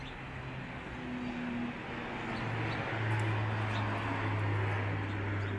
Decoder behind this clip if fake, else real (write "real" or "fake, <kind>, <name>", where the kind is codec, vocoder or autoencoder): real